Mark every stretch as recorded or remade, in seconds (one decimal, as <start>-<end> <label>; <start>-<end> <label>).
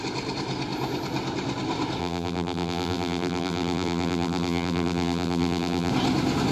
0.0-2.0 recorded; 2.0-5.9 remade; 5.9-6.5 recorded